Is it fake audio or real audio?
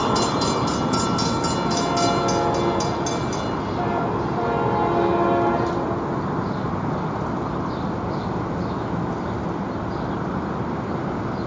real